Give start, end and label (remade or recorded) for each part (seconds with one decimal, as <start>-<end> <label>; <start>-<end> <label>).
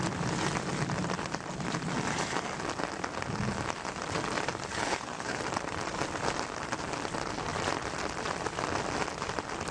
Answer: 0.0-4.8 recorded; 4.8-5.4 remade; 5.4-9.7 recorded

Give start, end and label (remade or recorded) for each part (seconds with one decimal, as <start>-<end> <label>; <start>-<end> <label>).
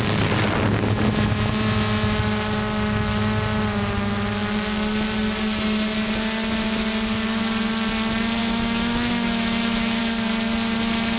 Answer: 0.0-8.4 recorded; 8.4-10.0 remade; 10.0-11.2 recorded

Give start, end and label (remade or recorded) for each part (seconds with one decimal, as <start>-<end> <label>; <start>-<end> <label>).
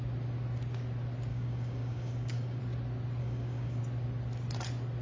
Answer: 0.0-1.3 recorded; 1.3-2.6 remade; 2.6-3.2 recorded; 3.2-3.8 remade; 3.8-5.0 recorded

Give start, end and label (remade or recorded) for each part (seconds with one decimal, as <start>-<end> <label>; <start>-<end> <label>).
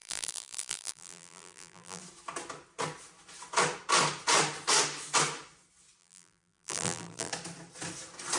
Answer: 0.0-2.0 remade; 2.0-6.0 recorded; 6.0-7.3 remade; 7.3-8.4 recorded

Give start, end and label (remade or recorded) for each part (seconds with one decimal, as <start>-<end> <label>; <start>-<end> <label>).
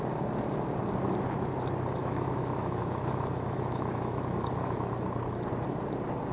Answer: 0.0-2.0 recorded; 2.0-4.9 remade; 4.9-6.3 recorded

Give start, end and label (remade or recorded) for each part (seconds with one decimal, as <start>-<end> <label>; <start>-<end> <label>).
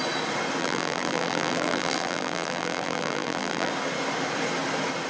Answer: 0.0-0.6 recorded; 0.6-3.7 remade; 3.7-5.1 recorded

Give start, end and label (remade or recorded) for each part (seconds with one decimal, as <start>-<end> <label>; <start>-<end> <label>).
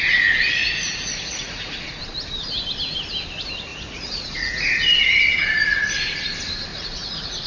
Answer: 0.0-0.6 recorded; 0.6-2.0 remade; 2.0-3.7 recorded; 3.7-4.8 remade; 4.8-6.7 recorded; 6.7-7.5 remade